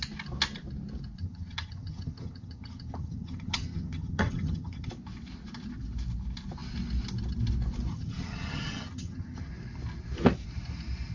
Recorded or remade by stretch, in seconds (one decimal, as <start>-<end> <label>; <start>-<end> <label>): 0.0-1.2 recorded; 1.2-4.9 remade; 4.9-7.9 recorded; 7.9-9.5 remade; 9.5-11.1 recorded